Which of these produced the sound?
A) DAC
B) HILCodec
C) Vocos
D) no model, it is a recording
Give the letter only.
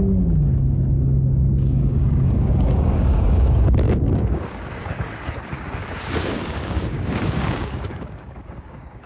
A